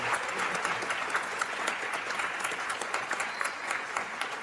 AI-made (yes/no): yes